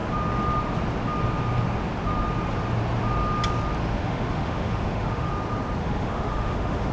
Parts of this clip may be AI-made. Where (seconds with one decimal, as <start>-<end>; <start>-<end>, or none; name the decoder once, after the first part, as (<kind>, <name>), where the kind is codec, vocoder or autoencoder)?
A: 3.8-5.3 (autoencoder, DAC-VAE); 5.8-6.9